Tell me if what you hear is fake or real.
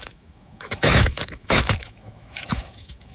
fake